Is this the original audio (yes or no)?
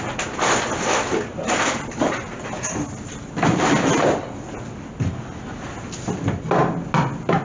yes